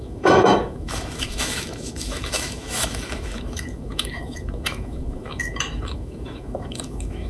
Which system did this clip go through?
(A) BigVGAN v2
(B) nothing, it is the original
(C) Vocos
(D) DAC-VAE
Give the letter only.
D